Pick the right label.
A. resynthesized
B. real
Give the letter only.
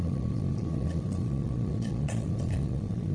A